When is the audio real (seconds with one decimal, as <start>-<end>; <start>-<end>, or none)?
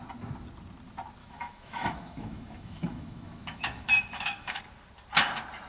0.0-1.2; 4.6-5.7